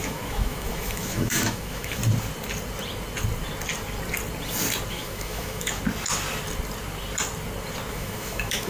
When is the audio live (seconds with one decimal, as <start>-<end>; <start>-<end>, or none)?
2.0-4.9; 5.8-7.9